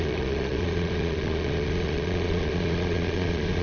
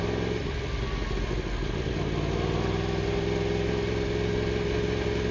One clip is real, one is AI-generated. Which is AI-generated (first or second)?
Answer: first